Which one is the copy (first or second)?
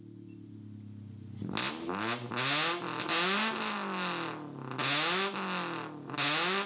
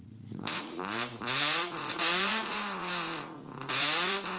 second